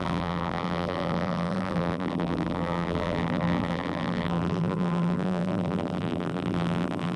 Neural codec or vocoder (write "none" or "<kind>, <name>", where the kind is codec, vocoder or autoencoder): vocoder, BigVGAN v2